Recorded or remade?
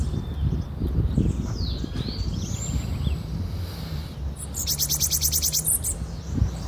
recorded